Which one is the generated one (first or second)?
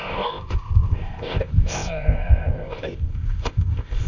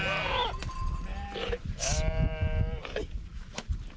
first